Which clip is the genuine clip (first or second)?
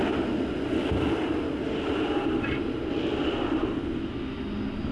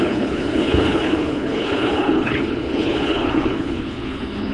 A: first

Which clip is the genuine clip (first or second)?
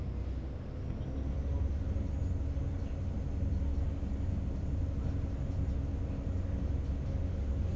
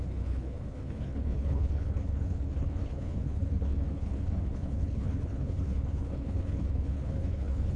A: first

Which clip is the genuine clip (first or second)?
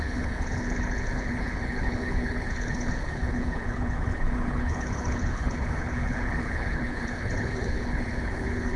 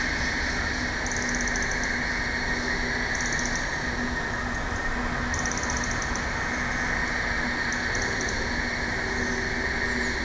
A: second